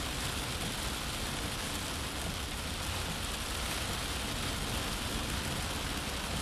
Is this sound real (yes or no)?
yes